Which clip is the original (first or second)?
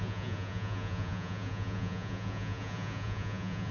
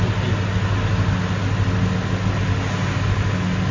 second